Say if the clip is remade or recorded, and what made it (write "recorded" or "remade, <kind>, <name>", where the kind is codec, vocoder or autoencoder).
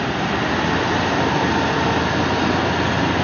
recorded